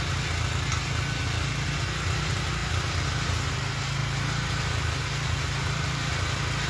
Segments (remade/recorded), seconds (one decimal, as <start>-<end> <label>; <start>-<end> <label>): 0.0-4.0 recorded; 4.0-6.7 remade